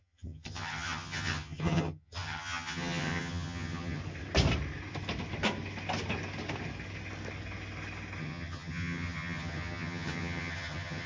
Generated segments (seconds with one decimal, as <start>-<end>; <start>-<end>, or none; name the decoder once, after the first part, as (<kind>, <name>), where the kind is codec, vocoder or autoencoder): 0.0-4.0 (vocoder, HiFi-GAN); 8.2-11.1